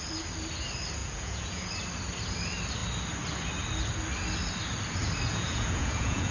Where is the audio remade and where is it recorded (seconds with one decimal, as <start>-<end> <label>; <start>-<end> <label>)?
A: 0.0-1.0 recorded; 1.0-1.7 remade; 1.7-5.3 recorded; 5.3-6.3 remade

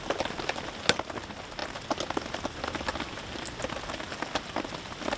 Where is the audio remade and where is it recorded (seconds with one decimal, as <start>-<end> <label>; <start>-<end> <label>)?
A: 0.0-5.2 recorded

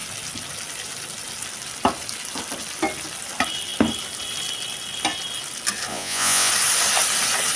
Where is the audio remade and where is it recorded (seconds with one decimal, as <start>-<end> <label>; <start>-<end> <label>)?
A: 0.0-5.9 recorded; 5.9-6.5 remade; 6.5-7.6 recorded